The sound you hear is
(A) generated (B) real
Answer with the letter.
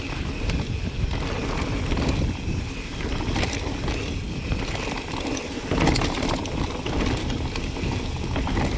B